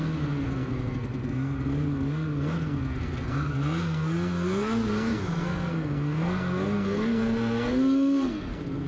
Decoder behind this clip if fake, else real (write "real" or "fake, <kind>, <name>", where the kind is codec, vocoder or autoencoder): fake, codec, SNAC